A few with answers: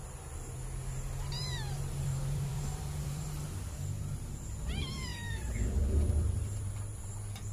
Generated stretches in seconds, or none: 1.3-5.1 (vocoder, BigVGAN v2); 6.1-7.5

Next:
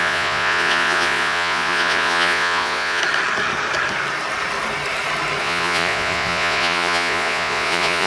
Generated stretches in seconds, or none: 0.0-3.0 (vocoder, Vocos); 5.4-8.1